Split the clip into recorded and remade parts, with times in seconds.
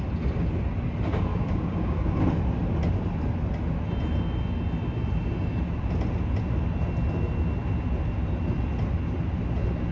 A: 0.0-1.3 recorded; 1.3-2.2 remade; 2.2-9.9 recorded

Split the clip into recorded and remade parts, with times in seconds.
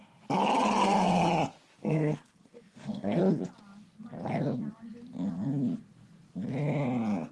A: 0.0-0.8 recorded; 0.8-1.3 remade; 1.3-1.8 recorded; 1.8-3.2 remade; 3.2-7.3 recorded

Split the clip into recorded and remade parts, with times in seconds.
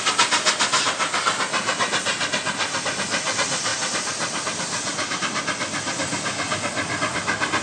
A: 0.0-7.6 recorded